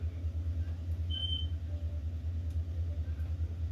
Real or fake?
real